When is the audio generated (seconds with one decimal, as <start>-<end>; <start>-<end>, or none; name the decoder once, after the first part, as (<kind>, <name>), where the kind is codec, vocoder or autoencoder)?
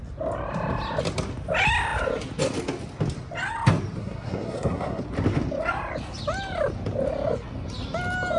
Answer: 4.0-5.0 (codec, SNAC)